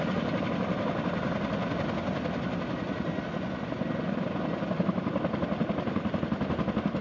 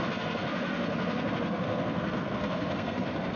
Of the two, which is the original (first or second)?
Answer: first